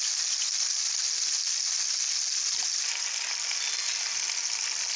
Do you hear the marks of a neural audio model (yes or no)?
no